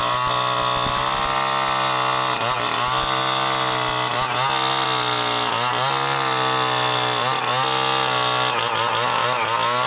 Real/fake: real